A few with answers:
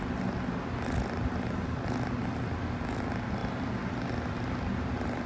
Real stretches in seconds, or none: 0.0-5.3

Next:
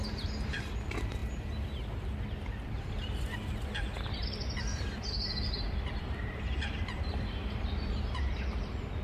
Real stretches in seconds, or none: 0.0-4.7; 8.1-9.0

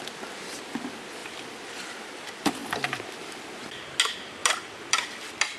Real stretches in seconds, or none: 0.0-2.6; 3.7-4.4